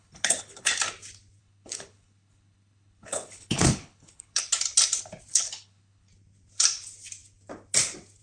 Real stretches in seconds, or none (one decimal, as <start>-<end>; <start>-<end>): 0.7-1.4; 4.5-5.3; 6.1-8.2